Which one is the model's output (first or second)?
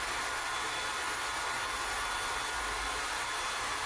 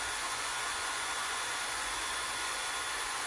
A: second